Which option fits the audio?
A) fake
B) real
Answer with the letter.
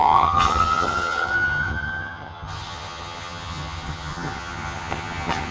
A